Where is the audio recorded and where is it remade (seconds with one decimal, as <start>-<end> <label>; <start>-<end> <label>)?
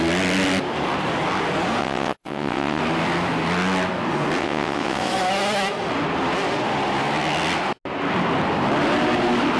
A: 0.0-1.8 recorded; 1.8-2.8 remade; 2.8-4.4 recorded; 4.4-5.1 remade; 5.1-9.6 recorded